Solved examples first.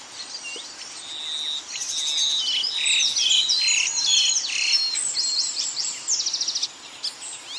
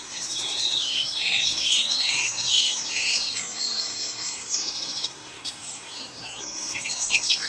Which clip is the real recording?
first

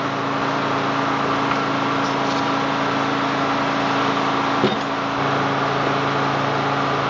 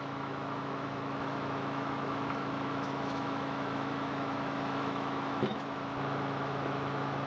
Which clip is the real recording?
first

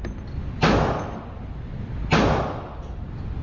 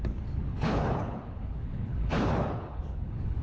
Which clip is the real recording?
first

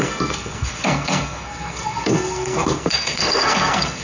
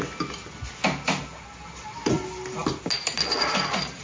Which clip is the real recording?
second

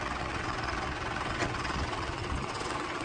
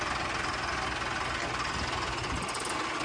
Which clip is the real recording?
second